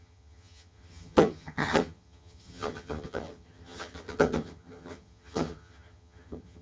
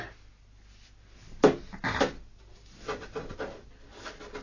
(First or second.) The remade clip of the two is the first